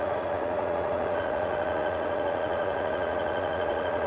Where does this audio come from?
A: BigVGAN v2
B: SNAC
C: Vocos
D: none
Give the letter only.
C